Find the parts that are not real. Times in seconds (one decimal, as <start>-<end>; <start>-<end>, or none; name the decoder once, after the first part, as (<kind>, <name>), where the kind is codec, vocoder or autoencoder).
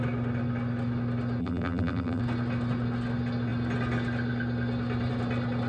1.4-2.2 (vocoder, BigVGAN v2)